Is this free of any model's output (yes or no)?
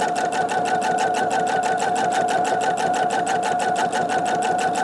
yes